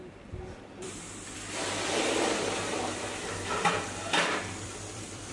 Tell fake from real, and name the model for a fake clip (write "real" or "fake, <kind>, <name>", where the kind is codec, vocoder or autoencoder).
fake, vocoder, BigVGAN v2